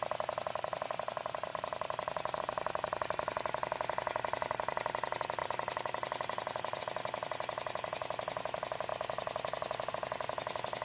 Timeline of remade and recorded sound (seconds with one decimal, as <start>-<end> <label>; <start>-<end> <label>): 0.0-1.5 recorded; 1.5-2.4 remade; 2.4-5.4 recorded; 5.4-6.8 remade; 6.8-10.8 recorded